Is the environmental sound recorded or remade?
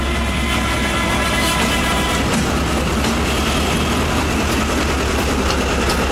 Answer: recorded